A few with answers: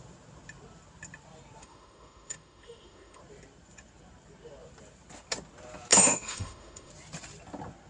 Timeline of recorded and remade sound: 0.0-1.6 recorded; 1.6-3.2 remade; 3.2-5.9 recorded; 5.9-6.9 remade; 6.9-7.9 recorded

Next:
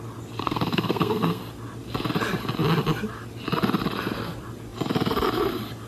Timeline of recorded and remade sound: 0.0-0.4 recorded; 0.4-1.4 remade; 1.4-5.9 recorded

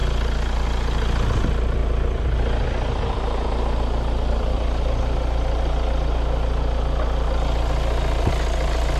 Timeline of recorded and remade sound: 0.0-9.0 recorded

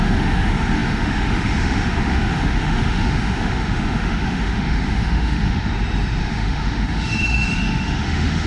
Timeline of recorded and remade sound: 0.0-5.7 remade; 5.7-6.2 recorded; 6.2-8.5 remade

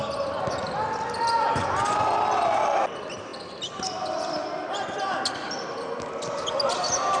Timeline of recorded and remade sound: 0.0-7.2 recorded

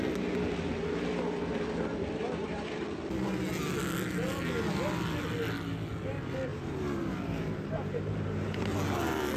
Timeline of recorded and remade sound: 0.0-2.2 recorded; 2.2-2.8 remade; 2.8-6.5 recorded; 6.5-8.6 remade; 8.6-9.4 recorded

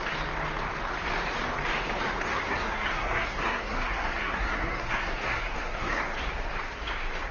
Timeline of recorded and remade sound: 0.0-2.3 recorded; 2.3-6.0 remade; 6.0-7.3 recorded